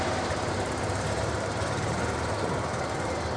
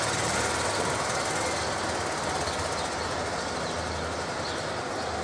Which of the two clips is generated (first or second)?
first